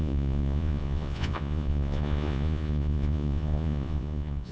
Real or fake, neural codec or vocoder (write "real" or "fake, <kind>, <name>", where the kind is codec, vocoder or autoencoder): fake, vocoder, Vocos